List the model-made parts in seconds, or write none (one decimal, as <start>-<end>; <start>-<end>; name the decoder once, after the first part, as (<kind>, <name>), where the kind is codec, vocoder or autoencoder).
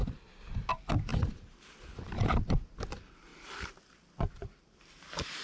0.0-0.7 (vocoder, BigVGAN v2); 1.1-2.8; 3.3-4.8